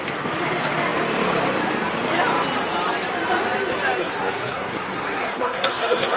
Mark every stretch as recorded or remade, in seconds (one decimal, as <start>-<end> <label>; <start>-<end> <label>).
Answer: 0.0-4.0 recorded; 4.0-6.2 remade